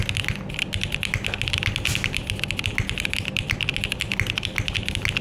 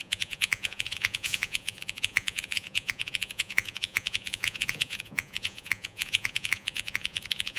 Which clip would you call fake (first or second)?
second